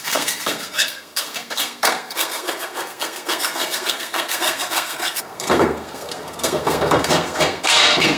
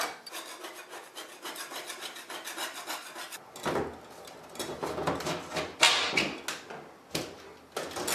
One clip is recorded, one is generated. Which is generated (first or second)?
first